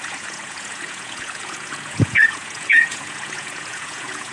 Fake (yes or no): yes